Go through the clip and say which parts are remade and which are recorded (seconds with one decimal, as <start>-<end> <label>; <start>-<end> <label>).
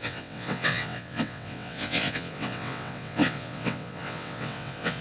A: 0.0-5.0 remade